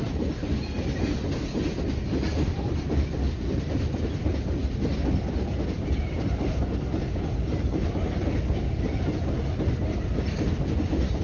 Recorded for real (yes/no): yes